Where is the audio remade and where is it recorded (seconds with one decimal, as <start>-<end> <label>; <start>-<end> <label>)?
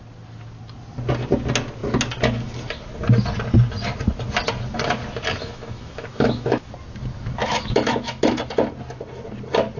0.0-5.4 recorded; 5.4-6.7 remade; 6.7-7.4 recorded; 7.4-8.4 remade; 8.4-9.8 recorded